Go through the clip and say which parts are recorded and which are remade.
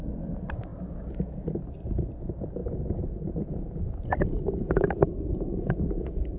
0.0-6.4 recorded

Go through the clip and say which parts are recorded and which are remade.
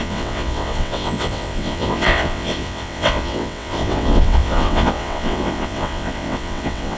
0.0-7.0 remade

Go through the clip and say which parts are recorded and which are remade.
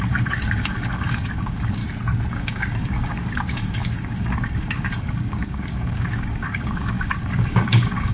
0.0-1.8 remade; 1.8-2.3 recorded; 2.3-8.1 remade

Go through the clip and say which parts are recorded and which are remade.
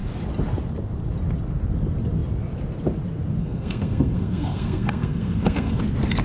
0.0-3.4 recorded; 3.4-5.8 remade; 5.8-6.2 recorded